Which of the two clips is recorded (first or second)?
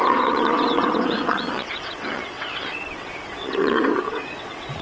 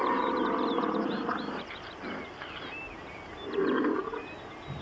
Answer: second